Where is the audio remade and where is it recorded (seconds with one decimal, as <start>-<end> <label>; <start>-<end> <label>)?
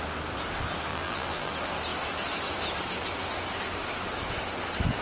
0.0-0.9 recorded; 0.9-1.5 remade; 1.5-5.0 recorded